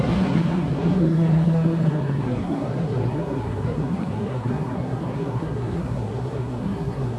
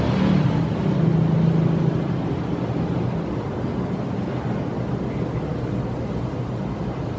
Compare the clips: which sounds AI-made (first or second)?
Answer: first